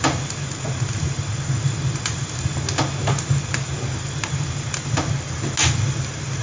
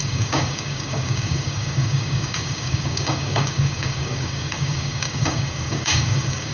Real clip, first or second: first